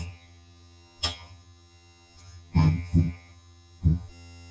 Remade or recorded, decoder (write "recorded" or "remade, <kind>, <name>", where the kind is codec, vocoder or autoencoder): remade, vocoder, HiFi-GAN